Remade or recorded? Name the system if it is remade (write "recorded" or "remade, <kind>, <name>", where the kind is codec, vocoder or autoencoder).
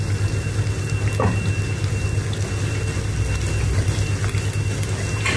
recorded